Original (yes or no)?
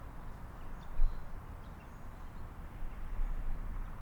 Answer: yes